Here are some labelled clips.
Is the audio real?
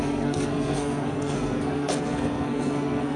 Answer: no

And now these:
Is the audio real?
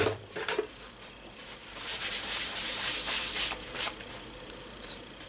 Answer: no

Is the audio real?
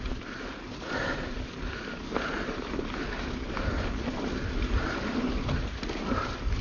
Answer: yes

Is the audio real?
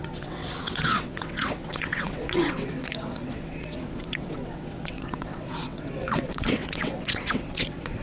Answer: no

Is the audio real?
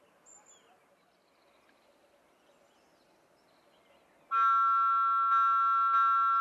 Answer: yes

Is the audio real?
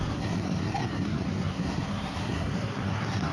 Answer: no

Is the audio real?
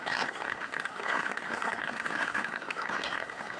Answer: no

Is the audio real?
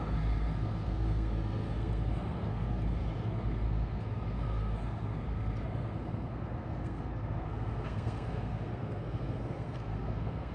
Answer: no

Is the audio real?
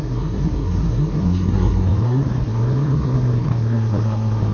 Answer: no